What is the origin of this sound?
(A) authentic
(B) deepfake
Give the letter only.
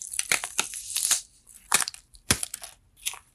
B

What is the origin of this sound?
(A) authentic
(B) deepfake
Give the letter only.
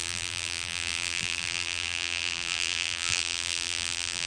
B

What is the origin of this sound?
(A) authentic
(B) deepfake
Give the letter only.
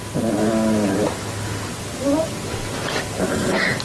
A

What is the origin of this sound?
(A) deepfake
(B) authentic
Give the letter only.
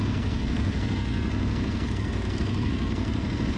A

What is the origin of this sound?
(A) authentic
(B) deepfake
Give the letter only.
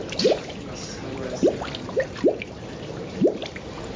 A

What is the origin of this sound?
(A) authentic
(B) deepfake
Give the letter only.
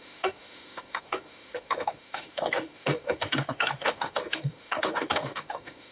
B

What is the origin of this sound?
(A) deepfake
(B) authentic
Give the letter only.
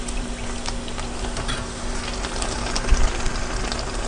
B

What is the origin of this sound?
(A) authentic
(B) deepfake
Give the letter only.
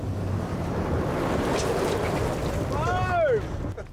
A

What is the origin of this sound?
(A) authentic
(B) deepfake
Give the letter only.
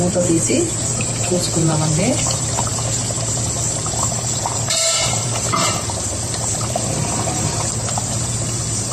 B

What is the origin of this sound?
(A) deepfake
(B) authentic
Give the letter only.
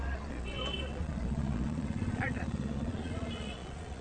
A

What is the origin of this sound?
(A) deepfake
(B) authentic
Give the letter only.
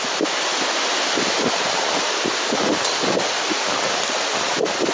B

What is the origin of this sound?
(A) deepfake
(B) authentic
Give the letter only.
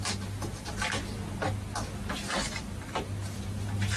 B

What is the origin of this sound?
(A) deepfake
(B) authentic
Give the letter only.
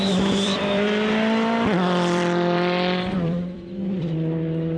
A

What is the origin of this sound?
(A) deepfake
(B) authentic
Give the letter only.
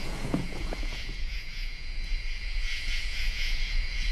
A